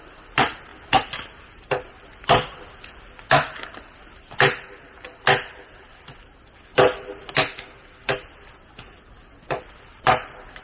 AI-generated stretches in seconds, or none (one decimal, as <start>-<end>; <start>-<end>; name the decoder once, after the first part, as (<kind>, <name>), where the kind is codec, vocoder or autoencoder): none